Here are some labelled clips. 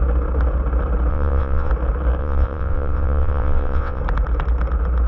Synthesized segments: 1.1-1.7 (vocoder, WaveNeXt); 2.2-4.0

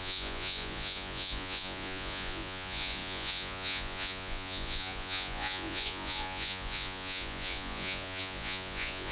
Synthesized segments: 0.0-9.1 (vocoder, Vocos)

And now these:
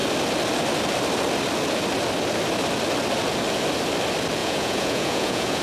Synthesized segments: 4.4-5.6 (vocoder, Vocos)